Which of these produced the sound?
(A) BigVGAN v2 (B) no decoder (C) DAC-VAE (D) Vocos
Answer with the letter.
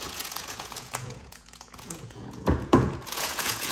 D